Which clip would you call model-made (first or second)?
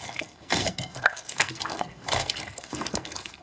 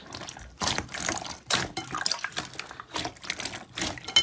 first